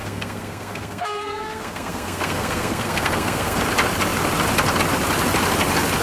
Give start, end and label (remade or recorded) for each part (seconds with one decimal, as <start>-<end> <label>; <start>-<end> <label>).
0.0-3.6 remade; 3.6-6.0 recorded